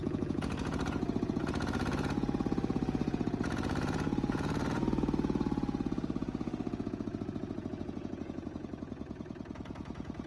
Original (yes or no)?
no